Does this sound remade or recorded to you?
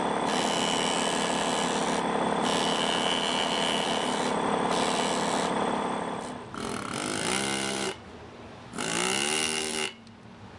recorded